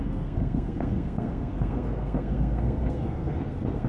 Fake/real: fake